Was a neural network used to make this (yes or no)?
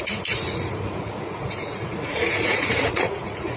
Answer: yes